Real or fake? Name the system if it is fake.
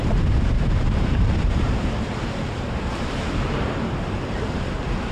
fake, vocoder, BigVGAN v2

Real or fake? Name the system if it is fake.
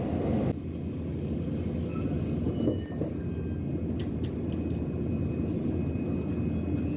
real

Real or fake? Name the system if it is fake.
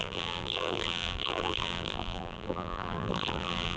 fake, vocoder, BigVGAN v2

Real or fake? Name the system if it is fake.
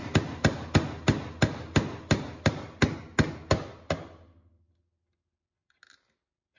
real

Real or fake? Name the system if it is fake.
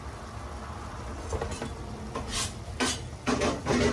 real